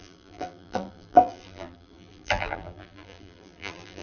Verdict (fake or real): fake